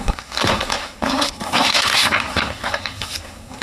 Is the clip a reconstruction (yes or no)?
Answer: yes